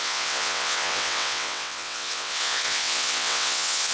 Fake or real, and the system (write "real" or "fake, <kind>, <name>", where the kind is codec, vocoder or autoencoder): fake, vocoder, WaveNeXt